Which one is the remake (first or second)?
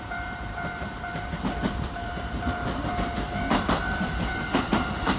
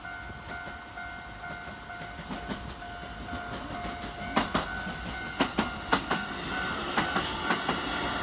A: first